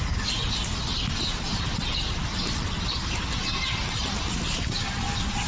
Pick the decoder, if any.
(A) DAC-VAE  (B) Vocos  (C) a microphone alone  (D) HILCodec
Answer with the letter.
C